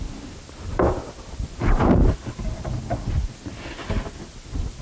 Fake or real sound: real